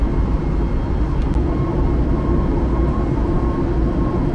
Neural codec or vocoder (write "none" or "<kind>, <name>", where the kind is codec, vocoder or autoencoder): none